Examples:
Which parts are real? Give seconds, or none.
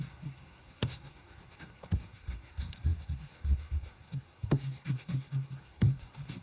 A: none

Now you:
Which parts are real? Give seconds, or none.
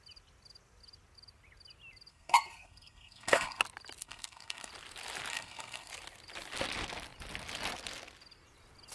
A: 0.0-2.1; 3.6-4.0; 4.7-5.3; 5.9-8.9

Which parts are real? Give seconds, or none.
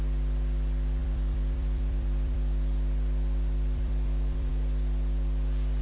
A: 0.0-1.0; 4.5-5.8